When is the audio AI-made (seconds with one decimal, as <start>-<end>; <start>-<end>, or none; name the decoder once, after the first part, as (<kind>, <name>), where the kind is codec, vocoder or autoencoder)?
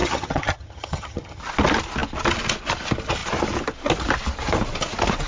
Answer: 0.0-1.4 (vocoder, HiFi-GAN)